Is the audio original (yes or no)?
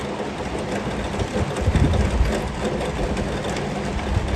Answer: yes